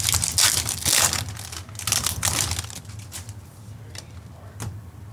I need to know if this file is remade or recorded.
recorded